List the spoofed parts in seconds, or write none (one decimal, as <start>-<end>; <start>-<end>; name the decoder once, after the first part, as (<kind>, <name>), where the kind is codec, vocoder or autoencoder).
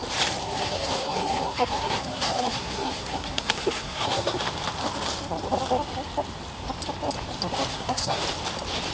0.4-4.4 (codec, SNAC); 7.7-8.2